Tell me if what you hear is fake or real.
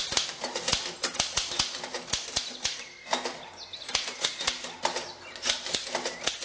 real